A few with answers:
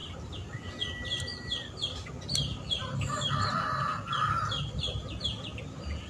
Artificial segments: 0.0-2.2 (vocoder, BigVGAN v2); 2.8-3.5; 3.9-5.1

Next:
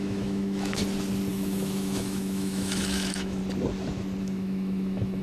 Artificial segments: 0.0-0.8 (autoencoder, DAC-VAE); 1.3-3.4; 4.2-5.2

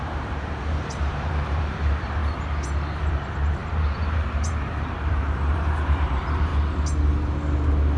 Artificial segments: 0.0-2.2 (vocoder, BigVGAN v2); 3.0-6.5

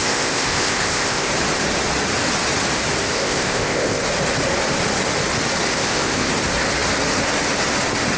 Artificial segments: 0.0-1.3 (codec, ZipCodec); 3.1-4.0; 5.7-6.3

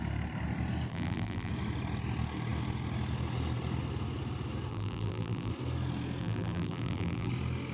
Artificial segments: 0.9-1.5 (vocoder, BigVGAN v2); 4.7-5.5; 6.2-7.3